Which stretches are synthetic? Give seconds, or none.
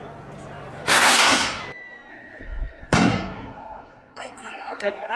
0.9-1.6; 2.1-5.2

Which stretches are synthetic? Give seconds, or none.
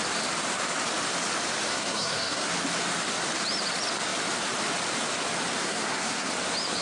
1.7-2.5; 5.6-6.3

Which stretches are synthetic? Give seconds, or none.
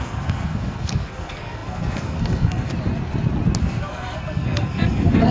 0.0-2.7; 3.6-5.3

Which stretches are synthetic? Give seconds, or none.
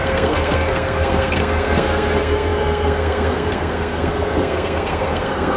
0.0-5.6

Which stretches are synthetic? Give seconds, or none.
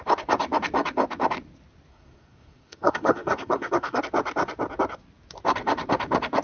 1.9-4.0